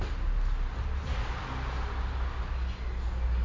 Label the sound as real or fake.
real